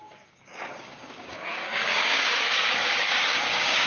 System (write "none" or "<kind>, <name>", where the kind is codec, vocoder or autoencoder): codec, DAC